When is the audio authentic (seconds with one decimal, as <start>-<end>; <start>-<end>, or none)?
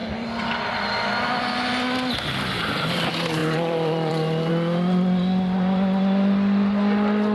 0.6-3.4; 4.5-7.3